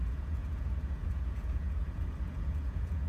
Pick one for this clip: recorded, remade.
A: remade